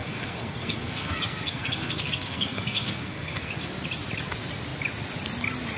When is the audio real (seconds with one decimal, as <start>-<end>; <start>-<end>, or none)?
3.5-5.8